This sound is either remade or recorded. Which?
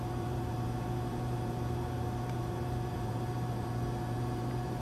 remade